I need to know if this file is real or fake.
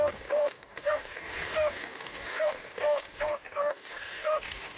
fake